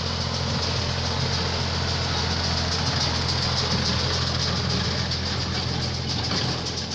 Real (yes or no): yes